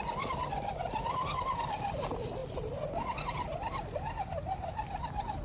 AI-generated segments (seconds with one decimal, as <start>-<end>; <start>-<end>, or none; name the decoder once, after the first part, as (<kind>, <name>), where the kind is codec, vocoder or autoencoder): none